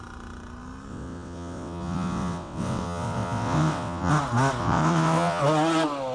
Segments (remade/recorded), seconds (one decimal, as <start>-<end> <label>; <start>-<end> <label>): 0.0-0.9 recorded; 0.9-4.1 remade; 4.1-4.6 recorded; 4.6-5.4 remade; 5.4-6.1 recorded